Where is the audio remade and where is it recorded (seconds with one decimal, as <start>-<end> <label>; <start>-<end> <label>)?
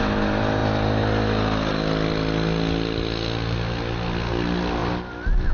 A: 0.0-5.5 recorded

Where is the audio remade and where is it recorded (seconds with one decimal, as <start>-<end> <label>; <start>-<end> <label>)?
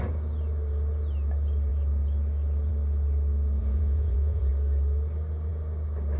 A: 0.0-3.6 recorded; 3.6-4.5 remade; 4.5-6.2 recorded